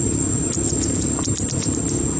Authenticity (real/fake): real